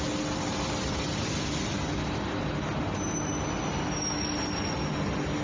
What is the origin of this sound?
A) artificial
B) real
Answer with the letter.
B